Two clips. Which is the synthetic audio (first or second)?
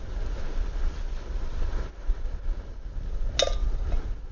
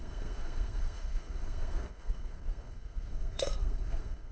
second